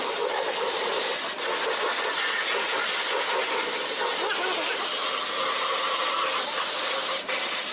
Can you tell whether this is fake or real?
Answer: fake